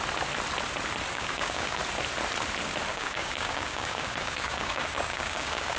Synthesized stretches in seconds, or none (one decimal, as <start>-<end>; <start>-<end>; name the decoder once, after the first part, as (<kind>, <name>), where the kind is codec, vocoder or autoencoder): 1.1-1.8 (codec, DAC); 2.9-5.8